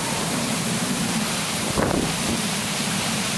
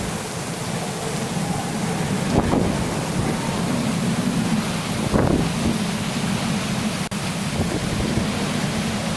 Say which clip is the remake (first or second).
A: first